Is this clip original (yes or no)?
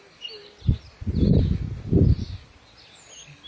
yes